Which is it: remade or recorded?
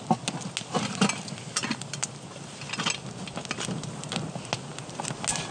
recorded